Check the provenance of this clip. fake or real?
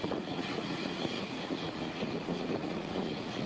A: fake